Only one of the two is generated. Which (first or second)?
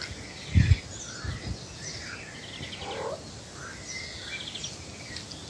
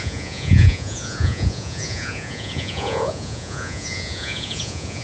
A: second